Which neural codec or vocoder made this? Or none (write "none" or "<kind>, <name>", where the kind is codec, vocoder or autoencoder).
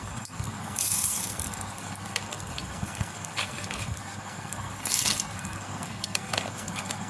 codec, SNAC